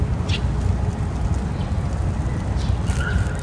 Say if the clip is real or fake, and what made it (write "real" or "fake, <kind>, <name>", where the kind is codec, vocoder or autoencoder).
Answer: real